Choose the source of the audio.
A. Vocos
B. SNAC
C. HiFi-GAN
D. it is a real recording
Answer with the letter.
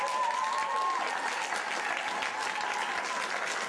D